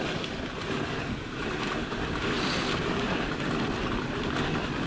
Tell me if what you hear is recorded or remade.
recorded